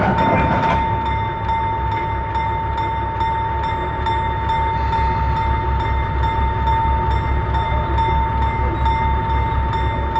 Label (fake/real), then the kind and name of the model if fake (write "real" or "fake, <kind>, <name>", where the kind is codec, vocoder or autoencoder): real